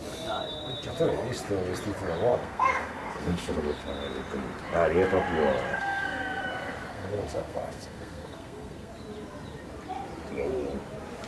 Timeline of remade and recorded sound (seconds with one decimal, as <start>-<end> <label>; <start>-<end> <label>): 0.0-2.3 recorded; 2.3-3.9 remade; 3.9-5.7 recorded; 5.7-6.4 remade; 6.4-6.9 recorded; 6.9-8.9 remade; 8.9-11.3 recorded